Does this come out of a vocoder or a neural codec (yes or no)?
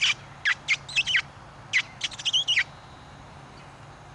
no